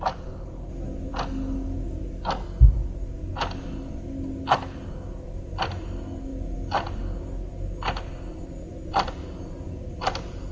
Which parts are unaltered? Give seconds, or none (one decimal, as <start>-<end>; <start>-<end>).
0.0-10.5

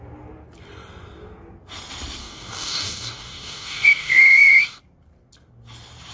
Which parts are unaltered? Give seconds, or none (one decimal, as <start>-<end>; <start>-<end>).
0.0-2.2; 4.8-6.1

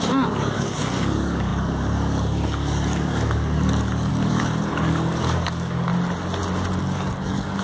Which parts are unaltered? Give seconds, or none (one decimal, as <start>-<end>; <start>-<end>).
5.9-6.8